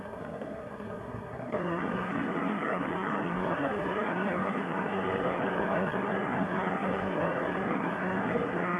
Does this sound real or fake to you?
fake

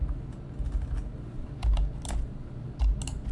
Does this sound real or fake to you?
real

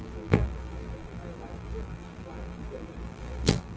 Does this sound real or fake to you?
fake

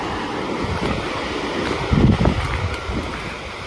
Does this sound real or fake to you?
real